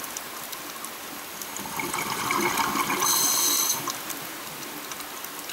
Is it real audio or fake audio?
real